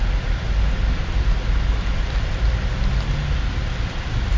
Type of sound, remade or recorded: recorded